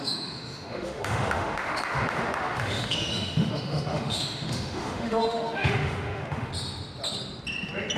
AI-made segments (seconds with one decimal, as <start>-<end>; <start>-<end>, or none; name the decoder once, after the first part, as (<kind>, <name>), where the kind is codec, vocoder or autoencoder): 0.0-6.5 (autoencoder, DAC-VAE)

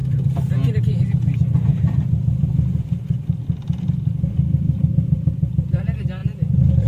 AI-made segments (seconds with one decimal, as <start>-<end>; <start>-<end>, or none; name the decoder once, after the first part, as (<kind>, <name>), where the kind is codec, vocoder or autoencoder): 1.7-5.8 (vocoder, BigVGAN v2); 6.2-6.9

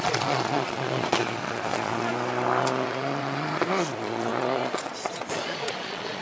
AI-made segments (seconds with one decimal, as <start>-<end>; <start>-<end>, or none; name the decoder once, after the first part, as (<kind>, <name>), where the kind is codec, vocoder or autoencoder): 0.0-2.1 (vocoder, Vocos); 2.6-6.2

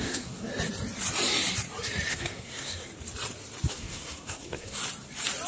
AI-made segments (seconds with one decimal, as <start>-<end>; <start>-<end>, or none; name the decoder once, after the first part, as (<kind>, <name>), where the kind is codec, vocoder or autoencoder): 0.0-0.5 (codec, SNAC); 2.1-2.9; 3.7-4.8